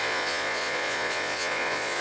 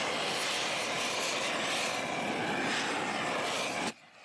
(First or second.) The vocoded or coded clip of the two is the first